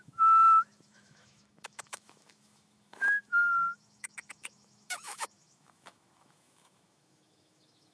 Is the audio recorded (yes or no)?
no